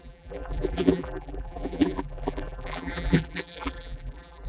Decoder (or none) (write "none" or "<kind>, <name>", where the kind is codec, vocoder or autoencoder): vocoder, BigVGAN v2